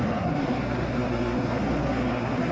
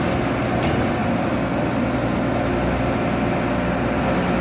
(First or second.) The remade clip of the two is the first